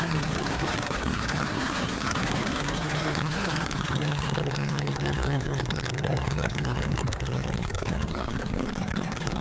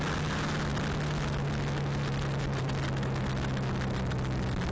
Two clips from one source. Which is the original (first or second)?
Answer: second